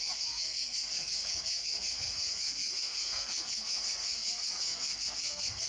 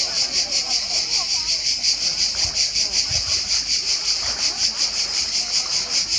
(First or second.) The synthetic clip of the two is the first